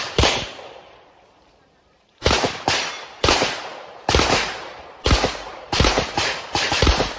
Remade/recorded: remade